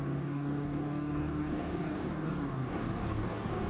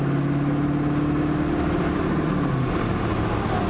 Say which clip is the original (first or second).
second